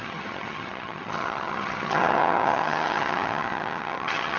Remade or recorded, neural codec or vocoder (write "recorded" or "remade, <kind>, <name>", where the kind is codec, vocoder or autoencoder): remade, vocoder, HiFi-GAN